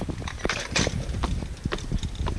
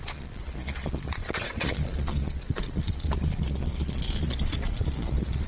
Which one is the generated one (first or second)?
second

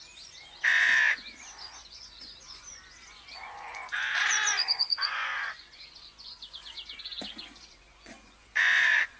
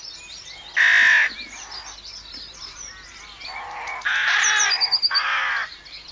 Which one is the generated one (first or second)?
first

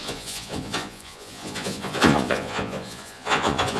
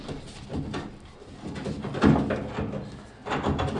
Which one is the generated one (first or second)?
first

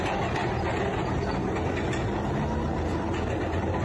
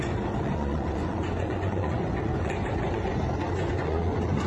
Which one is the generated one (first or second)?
second